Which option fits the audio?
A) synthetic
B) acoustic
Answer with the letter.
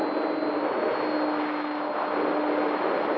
B